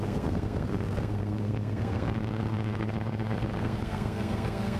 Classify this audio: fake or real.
fake